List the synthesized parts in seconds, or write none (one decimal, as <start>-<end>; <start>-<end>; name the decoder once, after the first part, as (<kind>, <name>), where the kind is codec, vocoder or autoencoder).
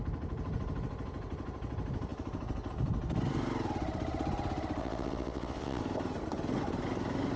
4.8-5.8 (vocoder, WaveNeXt)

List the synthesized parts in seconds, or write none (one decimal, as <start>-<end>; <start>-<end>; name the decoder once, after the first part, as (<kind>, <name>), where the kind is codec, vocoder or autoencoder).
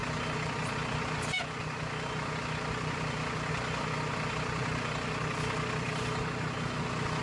none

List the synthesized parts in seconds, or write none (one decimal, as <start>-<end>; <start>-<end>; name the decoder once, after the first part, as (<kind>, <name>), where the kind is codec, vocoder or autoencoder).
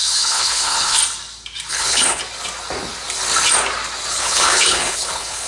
0.0-1.0 (codec, HILCodec); 1.7-2.2; 4.1-5.5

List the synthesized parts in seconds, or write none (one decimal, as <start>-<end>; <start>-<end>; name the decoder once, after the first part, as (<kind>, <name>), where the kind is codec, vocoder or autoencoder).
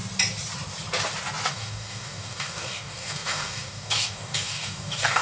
1.5-5.2 (codec, DAC)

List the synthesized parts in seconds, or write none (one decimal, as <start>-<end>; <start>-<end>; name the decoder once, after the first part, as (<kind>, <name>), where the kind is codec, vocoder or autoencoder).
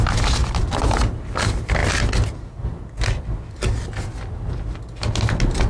none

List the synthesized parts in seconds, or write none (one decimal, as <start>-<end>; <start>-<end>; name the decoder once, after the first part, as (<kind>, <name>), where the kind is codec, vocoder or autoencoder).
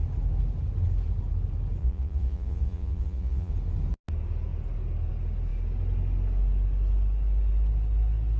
1.8-3.5 (vocoder, Vocos)